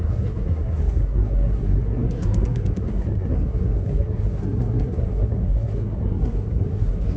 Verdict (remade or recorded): remade